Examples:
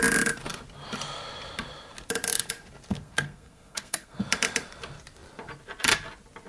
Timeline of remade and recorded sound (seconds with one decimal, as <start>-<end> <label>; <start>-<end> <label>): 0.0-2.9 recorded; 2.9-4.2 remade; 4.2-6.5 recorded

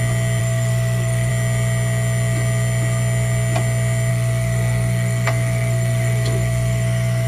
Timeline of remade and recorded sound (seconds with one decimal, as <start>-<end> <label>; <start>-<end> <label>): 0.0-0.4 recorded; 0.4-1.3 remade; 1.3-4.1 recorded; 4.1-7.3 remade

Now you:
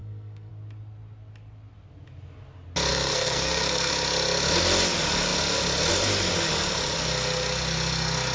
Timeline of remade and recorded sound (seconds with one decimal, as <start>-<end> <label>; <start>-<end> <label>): 0.0-0.5 remade; 0.5-2.9 recorded; 2.9-3.9 remade; 3.9-8.3 recorded

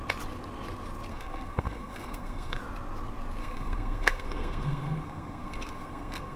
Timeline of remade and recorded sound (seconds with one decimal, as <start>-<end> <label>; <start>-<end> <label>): 0.0-1.1 recorded; 1.1-2.6 remade; 2.6-3.4 recorded; 3.4-6.4 remade